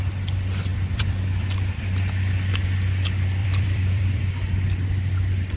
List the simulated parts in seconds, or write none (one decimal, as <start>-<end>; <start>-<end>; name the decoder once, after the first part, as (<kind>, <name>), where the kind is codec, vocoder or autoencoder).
0.7-1.8 (vocoder, BigVGAN v2); 3.4-4.2

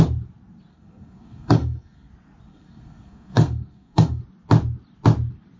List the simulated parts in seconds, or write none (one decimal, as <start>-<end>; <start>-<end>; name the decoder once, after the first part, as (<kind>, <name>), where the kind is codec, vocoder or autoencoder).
0.7-2.1 (codec, SNAC); 2.5-4.2

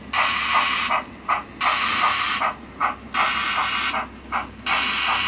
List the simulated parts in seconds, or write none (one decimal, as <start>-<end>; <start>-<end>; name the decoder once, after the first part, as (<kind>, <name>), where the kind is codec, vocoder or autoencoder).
none

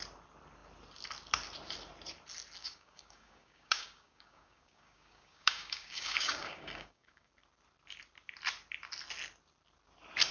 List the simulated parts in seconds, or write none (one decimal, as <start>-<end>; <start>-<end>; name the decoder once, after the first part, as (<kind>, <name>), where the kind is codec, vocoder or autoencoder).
2.6-7.3 (codec, DAC)

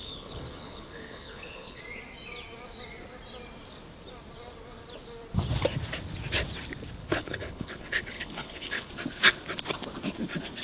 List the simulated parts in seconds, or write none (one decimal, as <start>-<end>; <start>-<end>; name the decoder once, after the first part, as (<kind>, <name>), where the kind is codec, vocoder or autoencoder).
0.0-1.8 (codec, HILCodec); 7.0-8.9

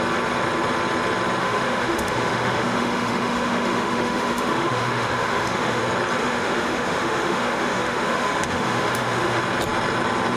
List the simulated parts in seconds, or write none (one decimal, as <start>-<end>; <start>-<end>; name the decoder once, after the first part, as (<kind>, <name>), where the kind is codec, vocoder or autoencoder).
1.4-5.8 (autoencoder, DAC-VAE); 6.2-9.4

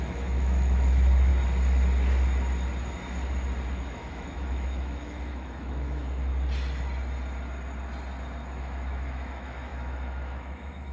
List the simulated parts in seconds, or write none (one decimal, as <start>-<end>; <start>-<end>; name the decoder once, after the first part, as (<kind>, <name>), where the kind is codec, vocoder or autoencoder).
0.0-1.3 (autoencoder, DAC-VAE); 3.9-6.3; 8.6-10.9